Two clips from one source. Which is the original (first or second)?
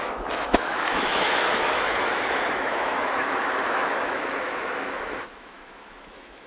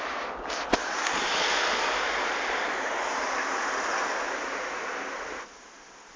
second